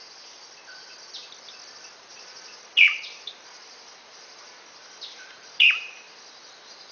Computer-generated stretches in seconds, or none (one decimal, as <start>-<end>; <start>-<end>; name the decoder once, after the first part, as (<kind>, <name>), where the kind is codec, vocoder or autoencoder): 2.1-6.2 (vocoder, BigVGAN v2)